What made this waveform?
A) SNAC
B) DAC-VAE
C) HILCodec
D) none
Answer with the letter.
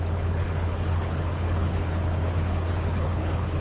C